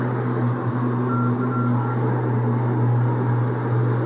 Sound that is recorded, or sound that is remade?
recorded